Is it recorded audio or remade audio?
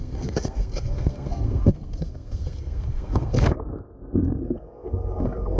remade